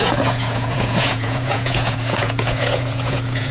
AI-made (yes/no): yes